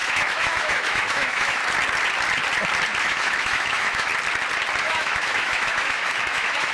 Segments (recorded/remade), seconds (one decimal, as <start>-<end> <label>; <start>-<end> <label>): 0.0-1.6 remade; 1.6-3.0 recorded; 3.0-4.1 remade; 4.1-4.8 recorded; 4.8-6.7 remade

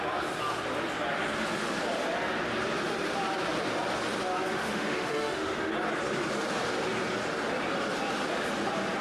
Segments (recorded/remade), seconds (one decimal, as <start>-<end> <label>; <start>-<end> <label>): 0.0-4.6 recorded; 4.6-5.7 remade; 5.7-9.0 recorded

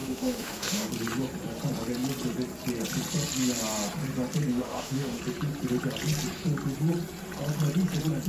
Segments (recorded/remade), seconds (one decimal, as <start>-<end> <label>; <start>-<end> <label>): 0.0-0.9 remade; 0.9-4.5 recorded; 4.5-5.2 remade; 5.2-8.3 recorded

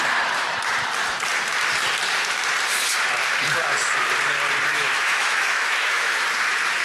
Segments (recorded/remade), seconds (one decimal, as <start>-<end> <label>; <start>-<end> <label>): 0.0-4.7 recorded; 4.7-6.2 remade; 6.2-6.8 recorded